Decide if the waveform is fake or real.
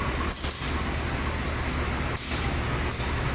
real